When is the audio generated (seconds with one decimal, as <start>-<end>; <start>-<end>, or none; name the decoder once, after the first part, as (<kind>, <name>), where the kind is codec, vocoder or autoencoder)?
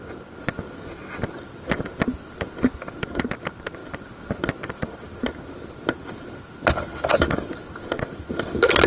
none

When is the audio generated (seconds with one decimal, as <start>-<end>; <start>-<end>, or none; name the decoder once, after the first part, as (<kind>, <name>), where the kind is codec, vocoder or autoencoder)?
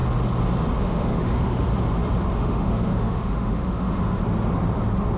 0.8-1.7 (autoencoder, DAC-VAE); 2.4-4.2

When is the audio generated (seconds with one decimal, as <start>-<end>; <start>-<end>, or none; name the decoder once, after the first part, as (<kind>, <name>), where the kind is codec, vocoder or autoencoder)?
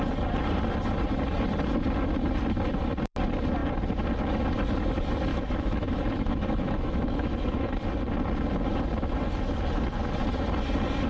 5.3-7.7 (autoencoder, DAC-VAE)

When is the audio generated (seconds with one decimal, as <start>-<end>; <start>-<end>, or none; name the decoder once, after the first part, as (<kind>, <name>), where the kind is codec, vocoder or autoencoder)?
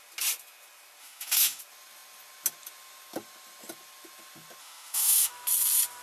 1.0-1.6 (autoencoder, DAC-VAE); 4.6-5.3